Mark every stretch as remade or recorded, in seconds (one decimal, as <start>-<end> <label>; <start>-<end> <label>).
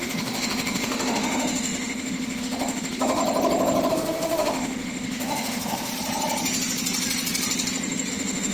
0.0-3.2 remade; 3.2-3.9 recorded; 3.9-5.9 remade; 5.9-8.1 recorded; 8.1-8.5 remade